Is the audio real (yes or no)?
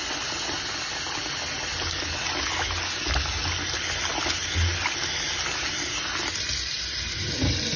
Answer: yes